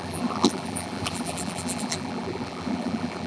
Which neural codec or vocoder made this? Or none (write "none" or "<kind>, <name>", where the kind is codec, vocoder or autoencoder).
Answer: vocoder, BigVGAN v2